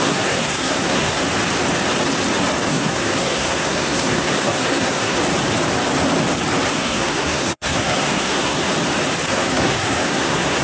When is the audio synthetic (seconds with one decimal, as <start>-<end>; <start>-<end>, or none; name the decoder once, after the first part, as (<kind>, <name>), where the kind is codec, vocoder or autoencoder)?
0.0-1.2 (codec, SNAC); 2.7-5.2; 6.7-8.7; 9.3-10.6